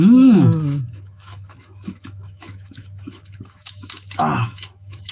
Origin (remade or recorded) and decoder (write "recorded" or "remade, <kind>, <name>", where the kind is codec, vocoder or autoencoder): remade, autoencoder, DAC-VAE